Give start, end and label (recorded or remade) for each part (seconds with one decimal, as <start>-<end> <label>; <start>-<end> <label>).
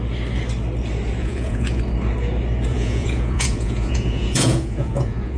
0.0-1.2 recorded; 1.2-1.8 remade; 1.8-2.7 recorded; 2.7-5.4 remade